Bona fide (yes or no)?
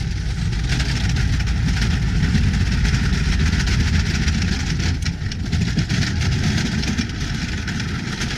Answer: yes